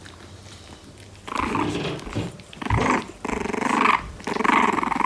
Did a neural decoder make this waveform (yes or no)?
no